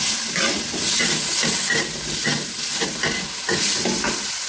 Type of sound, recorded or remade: recorded